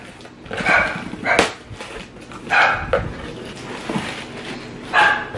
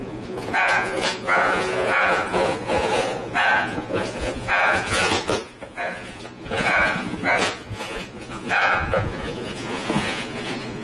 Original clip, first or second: first